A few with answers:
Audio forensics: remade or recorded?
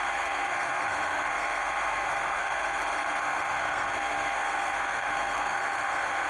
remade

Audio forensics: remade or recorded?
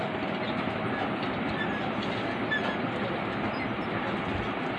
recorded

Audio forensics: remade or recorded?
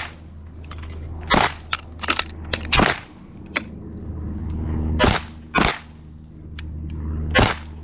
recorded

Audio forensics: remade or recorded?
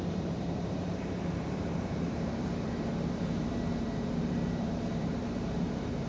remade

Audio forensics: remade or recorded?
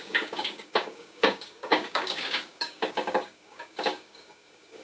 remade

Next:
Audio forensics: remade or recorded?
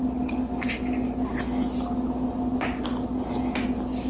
recorded